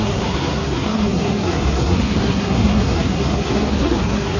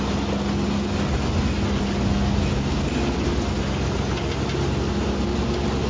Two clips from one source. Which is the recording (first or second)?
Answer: second